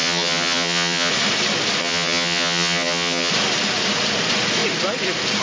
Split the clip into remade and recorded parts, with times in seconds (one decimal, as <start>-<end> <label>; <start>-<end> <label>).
0.0-1.1 remade; 1.1-1.8 recorded; 1.8-3.3 remade; 3.3-5.4 recorded

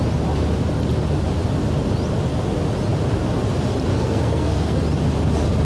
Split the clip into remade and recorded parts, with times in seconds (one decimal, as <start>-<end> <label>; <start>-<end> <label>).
0.0-3.9 recorded; 3.9-4.8 remade; 4.8-5.6 recorded

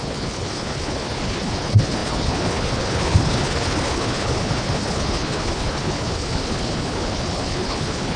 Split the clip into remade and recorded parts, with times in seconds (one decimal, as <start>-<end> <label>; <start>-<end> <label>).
0.0-8.2 remade

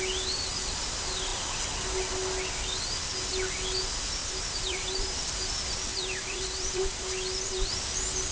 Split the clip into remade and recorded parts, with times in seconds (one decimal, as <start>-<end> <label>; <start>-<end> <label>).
0.0-4.2 recorded; 4.2-5.1 remade; 5.1-5.9 recorded; 5.9-7.7 remade; 7.7-8.3 recorded

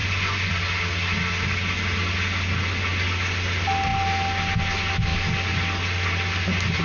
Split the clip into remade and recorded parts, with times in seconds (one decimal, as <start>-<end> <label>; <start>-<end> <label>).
0.0-0.5 remade; 0.5-6.8 recorded

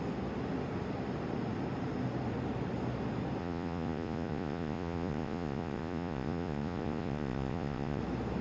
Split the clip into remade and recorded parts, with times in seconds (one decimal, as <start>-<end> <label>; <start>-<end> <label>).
0.0-3.4 recorded; 3.4-8.0 remade; 8.0-8.4 recorded

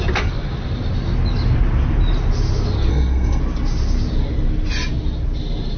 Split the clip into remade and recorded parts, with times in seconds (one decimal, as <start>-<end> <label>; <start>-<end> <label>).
0.0-2.9 recorded; 2.9-3.4 remade; 3.4-5.8 recorded

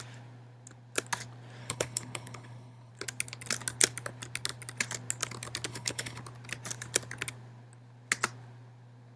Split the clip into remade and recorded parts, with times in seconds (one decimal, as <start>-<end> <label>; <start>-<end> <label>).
0.0-1.6 recorded; 1.6-2.9 remade; 2.9-5.7 recorded; 5.7-6.2 remade; 6.2-9.2 recorded